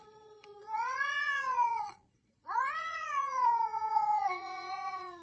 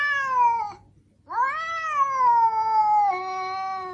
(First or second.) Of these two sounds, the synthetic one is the first